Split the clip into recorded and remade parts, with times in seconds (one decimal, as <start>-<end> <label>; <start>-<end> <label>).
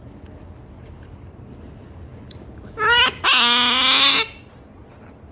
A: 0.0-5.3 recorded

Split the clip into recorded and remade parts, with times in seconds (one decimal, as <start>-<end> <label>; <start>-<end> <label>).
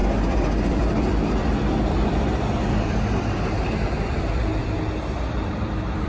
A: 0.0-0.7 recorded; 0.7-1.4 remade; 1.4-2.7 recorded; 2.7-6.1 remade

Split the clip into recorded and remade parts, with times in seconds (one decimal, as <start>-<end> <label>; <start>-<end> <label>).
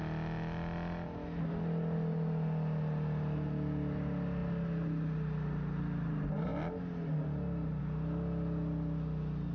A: 0.0-9.5 recorded